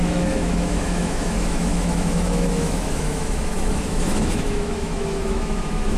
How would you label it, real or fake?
fake